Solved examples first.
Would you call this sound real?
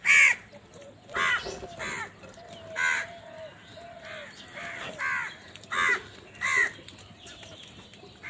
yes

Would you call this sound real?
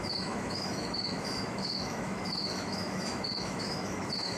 no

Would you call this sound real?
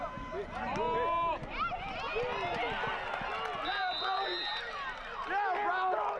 yes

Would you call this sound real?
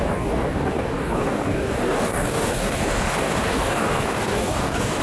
no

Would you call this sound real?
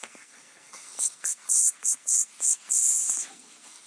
no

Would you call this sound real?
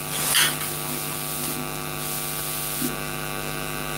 yes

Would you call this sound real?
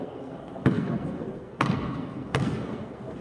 no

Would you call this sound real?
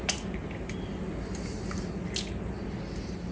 yes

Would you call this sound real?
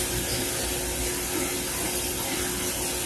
yes